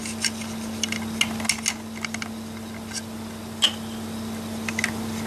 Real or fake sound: real